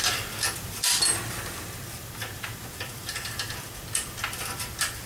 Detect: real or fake fake